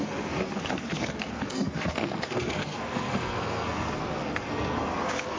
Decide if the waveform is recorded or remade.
remade